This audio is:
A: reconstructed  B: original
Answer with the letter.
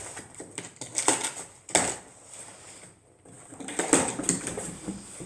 B